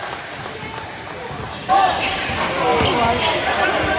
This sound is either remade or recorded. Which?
recorded